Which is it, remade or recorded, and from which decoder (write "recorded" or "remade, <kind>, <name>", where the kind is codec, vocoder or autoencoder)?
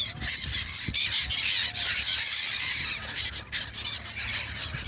recorded